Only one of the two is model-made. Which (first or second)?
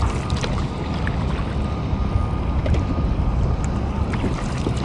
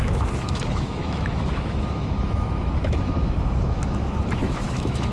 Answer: second